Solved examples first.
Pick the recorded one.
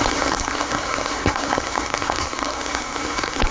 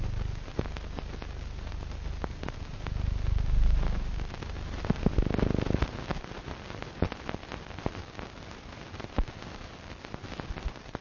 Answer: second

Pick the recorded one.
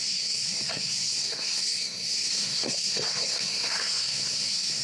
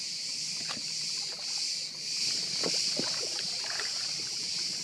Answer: second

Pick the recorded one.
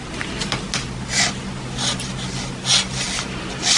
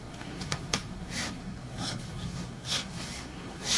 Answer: first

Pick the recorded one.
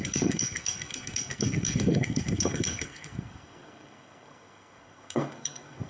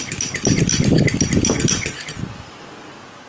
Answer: second